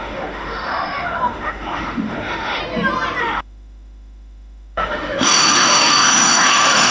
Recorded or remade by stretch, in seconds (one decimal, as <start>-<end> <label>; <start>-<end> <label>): 0.0-2.6 remade; 2.6-3.2 recorded; 3.2-6.9 remade